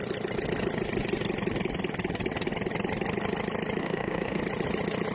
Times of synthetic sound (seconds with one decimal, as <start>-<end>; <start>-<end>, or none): 3.8-4.4